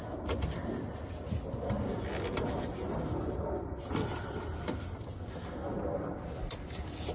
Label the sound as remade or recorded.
recorded